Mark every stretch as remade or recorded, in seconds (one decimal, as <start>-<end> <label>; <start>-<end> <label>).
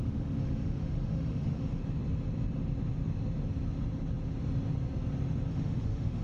0.0-1.8 remade; 1.8-5.5 recorded; 5.5-6.2 remade